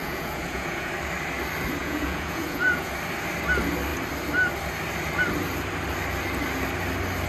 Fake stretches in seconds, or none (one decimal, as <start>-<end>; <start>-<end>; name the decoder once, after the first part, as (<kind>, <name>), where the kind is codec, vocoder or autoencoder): 0.0-0.9 (vocoder, Vocos); 1.8-2.9